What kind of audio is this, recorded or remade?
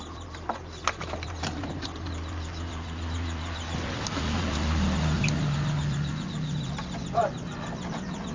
recorded